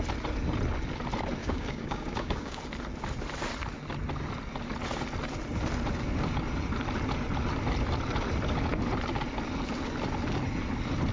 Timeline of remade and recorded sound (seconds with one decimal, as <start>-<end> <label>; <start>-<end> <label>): 0.0-1.4 recorded; 1.4-2.6 remade; 2.6-11.1 recorded